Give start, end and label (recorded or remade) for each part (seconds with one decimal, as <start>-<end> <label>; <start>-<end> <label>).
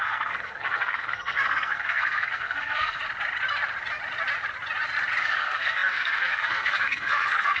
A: 0.0-3.0 remade; 3.0-5.2 recorded; 5.2-7.6 remade